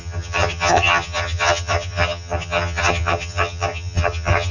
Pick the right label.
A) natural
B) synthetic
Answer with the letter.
B